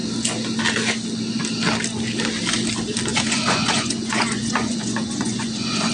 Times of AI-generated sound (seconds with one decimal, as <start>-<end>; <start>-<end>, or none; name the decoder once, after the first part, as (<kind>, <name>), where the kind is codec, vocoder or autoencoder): 3.1-5.9 (vocoder, Vocos)